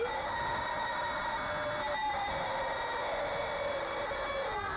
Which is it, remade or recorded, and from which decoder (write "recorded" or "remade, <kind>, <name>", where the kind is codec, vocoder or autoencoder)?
recorded